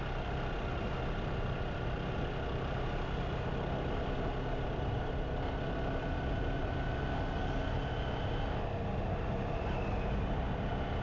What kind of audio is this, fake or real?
real